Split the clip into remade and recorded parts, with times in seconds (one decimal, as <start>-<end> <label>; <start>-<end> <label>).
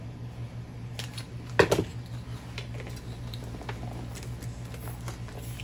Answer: 0.0-5.6 recorded